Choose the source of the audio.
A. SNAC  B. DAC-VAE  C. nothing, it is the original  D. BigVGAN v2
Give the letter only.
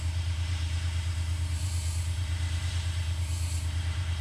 D